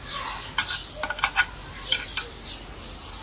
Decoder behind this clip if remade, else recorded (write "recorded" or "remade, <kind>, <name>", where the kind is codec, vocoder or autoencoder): recorded